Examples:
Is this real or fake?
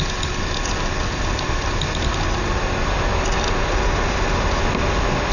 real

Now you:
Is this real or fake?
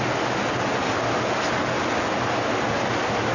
real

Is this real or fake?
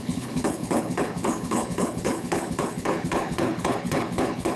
fake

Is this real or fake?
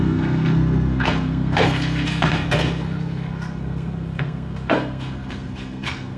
fake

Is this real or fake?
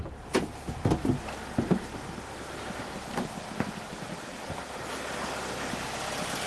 real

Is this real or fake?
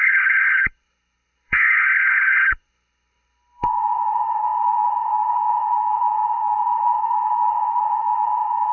fake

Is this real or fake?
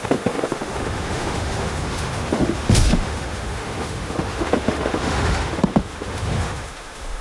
fake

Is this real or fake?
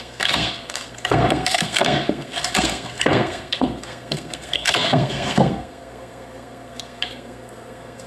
fake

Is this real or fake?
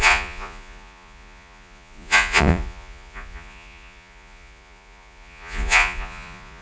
fake